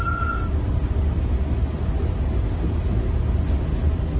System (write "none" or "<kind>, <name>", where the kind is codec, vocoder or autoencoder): none